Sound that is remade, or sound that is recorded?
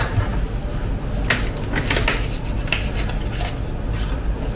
recorded